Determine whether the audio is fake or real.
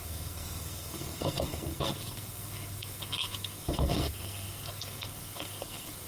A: fake